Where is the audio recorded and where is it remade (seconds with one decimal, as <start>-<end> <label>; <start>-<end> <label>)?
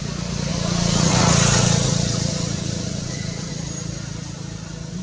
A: 0.0-0.5 recorded; 0.5-3.5 remade; 3.5-5.0 recorded